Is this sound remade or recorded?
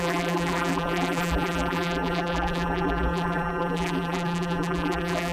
remade